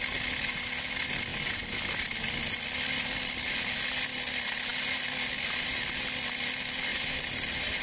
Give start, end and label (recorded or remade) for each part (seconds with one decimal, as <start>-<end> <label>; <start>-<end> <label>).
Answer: 0.0-6.9 recorded; 6.9-7.8 remade